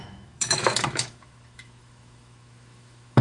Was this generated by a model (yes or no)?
yes